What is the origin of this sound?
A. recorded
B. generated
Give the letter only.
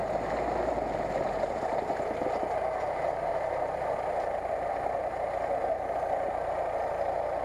A